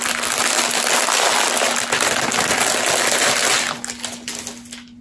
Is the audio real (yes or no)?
yes